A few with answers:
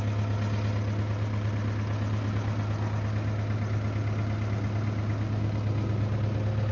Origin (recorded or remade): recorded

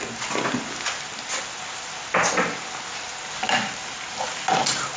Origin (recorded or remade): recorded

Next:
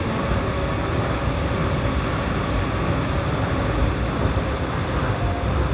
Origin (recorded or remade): recorded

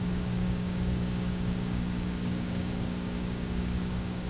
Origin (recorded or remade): remade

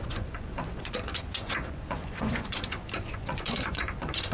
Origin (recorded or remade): remade